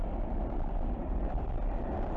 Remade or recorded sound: remade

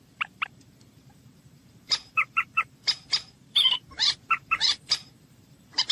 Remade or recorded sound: remade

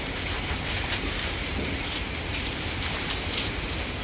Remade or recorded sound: remade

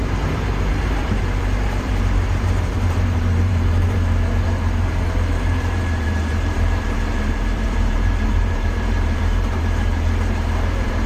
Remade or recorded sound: remade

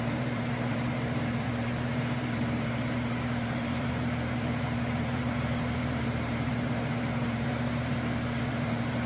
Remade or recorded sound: remade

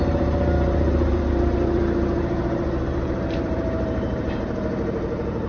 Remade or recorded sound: remade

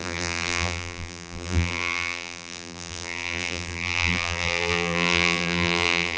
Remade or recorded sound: remade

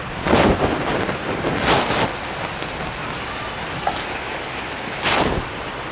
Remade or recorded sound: recorded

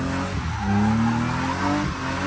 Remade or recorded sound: recorded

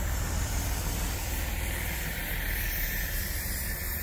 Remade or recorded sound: remade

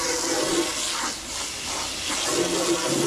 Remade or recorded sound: recorded